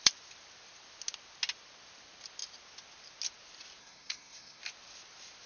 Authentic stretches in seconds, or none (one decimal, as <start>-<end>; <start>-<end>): 0.0-3.8; 4.6-5.5